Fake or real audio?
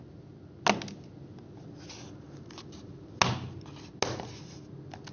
real